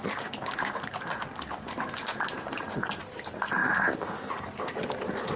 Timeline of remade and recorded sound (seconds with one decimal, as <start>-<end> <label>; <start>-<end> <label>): 0.0-2.0 recorded; 2.0-3.6 remade; 3.6-4.9 recorded; 4.9-5.4 remade